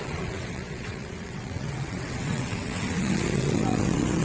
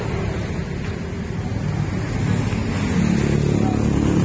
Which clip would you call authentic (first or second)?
second